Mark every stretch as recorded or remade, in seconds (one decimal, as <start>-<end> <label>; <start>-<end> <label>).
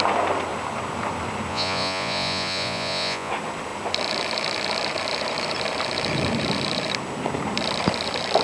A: 0.0-1.5 recorded; 1.5-3.3 remade; 3.3-8.4 recorded